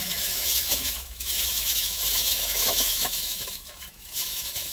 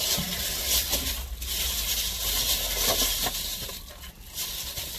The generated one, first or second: first